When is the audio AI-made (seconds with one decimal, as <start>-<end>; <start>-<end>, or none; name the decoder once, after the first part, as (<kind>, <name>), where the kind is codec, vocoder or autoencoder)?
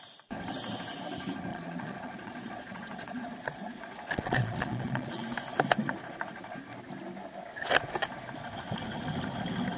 1.5-5.2 (vocoder, Vocos)